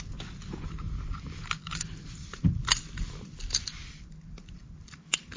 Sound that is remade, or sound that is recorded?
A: remade